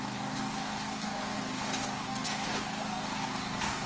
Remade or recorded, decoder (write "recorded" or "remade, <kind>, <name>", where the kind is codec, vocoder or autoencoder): remade, codec, DAC